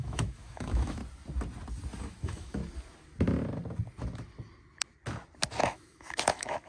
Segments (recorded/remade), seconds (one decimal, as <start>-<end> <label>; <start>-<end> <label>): 0.0-1.0 remade; 1.0-2.0 recorded; 2.0-2.6 remade; 2.6-5.6 recorded; 5.6-6.7 remade